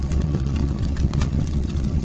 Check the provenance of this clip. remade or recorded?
remade